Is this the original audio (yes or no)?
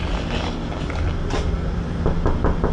yes